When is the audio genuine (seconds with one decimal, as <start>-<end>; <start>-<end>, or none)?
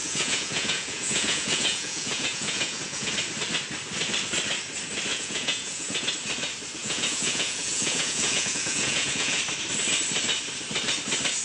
3.1-5.1; 6.1-6.8; 9.4-11.4